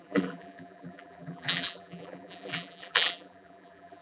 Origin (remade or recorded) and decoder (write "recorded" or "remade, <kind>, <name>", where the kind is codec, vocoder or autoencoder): remade, vocoder, BigVGAN v2